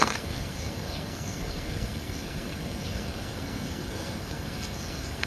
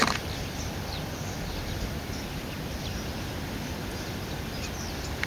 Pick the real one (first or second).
second